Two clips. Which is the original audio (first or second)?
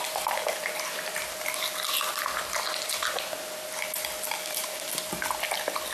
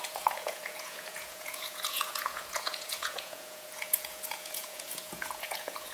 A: first